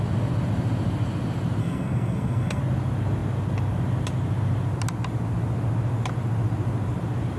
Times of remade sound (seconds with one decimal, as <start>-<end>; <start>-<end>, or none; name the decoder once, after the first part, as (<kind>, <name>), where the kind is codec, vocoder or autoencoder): 1.6-2.6 (codec, SNAC)

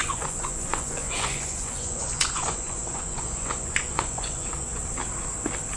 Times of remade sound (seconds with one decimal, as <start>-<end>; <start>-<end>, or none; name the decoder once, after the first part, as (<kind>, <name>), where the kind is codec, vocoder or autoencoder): 0.0-4.8 (vocoder, Vocos)

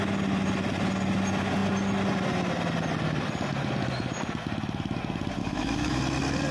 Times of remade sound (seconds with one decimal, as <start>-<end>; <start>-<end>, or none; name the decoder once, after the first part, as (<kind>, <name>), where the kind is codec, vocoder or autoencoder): 5.4-6.0 (autoencoder, DAC-VAE)